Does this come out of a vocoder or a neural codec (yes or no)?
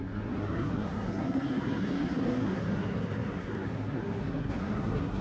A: yes